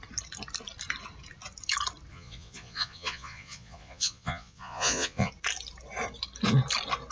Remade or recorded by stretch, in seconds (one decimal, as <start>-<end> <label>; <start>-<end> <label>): 0.0-2.1 recorded; 2.1-5.3 remade; 5.3-7.1 recorded